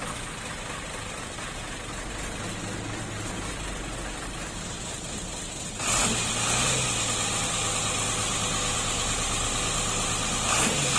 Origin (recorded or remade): recorded